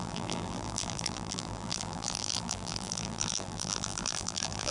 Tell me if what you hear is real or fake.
fake